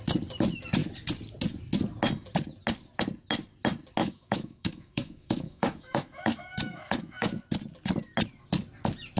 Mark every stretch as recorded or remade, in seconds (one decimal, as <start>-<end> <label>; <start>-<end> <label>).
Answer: 0.0-4.0 recorded; 4.0-7.4 remade; 7.4-9.2 recorded